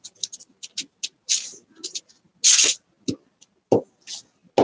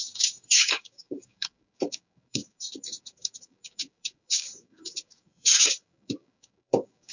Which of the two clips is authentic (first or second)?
first